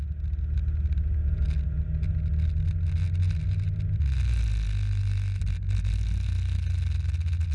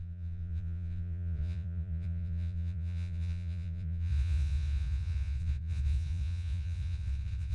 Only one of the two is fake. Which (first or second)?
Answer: second